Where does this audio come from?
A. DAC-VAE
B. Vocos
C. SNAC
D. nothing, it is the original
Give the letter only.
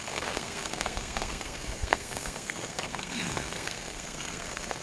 C